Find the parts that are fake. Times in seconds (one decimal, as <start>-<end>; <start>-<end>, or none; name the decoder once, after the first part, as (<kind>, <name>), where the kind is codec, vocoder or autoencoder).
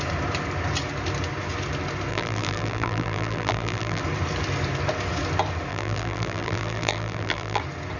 2.1-4.0 (vocoder, BigVGAN v2); 5.7-7.6